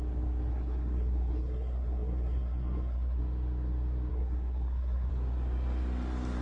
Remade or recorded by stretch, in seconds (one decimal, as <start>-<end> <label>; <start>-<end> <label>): 0.0-0.5 recorded; 0.5-3.2 remade; 3.2-4.1 recorded; 4.1-5.1 remade; 5.1-6.4 recorded